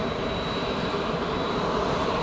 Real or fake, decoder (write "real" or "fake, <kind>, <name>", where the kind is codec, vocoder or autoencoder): fake, vocoder, BigVGAN v2